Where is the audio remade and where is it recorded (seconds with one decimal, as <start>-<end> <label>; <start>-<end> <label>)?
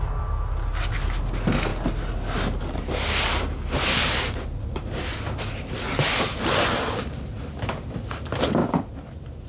0.0-9.5 recorded